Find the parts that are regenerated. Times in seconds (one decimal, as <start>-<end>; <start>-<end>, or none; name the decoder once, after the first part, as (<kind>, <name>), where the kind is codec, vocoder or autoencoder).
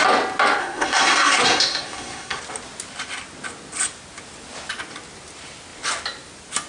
0.6-2.4 (codec, SNAC)